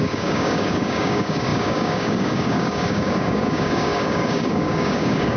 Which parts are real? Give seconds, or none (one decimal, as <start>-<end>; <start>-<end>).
none